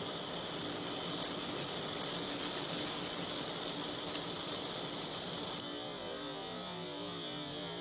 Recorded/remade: recorded